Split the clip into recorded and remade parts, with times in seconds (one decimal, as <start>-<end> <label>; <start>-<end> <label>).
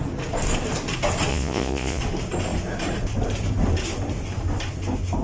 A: 0.0-1.3 recorded; 1.3-2.0 remade; 2.0-5.2 recorded